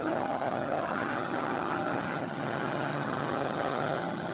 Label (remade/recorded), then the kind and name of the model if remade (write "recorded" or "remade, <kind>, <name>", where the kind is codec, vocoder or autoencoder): remade, vocoder, HiFi-GAN